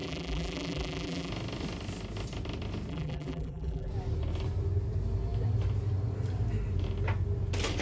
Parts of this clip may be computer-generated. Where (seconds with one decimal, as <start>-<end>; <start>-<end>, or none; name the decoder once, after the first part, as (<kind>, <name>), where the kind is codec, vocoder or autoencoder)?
0.0-1.3 (vocoder, BigVGAN v2); 2.9-3.9